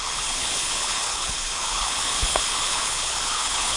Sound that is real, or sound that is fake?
fake